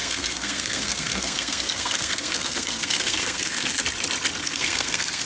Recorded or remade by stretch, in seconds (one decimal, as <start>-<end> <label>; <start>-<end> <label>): 0.0-3.8 remade; 3.8-4.4 recorded; 4.4-5.3 remade